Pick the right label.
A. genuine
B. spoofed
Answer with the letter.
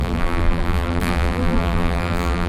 B